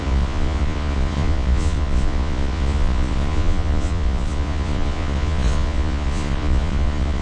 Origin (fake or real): fake